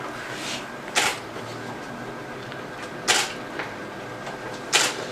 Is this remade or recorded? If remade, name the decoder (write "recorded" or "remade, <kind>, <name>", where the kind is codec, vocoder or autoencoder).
recorded